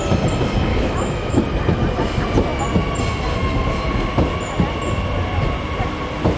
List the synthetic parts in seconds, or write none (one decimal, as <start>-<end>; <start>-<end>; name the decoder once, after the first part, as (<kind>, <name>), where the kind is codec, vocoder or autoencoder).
0.7-1.4 (autoencoder, DAC-VAE)

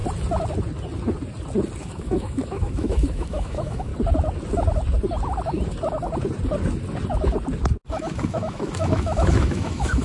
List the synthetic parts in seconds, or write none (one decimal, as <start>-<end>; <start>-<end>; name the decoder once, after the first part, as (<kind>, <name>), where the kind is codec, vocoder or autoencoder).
1.8-3.9 (autoencoder, DAC-VAE); 7.9-10.0